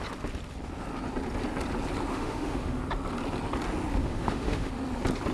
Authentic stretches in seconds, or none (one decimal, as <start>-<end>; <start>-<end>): 0.0-2.1; 2.8-4.0; 4.7-5.3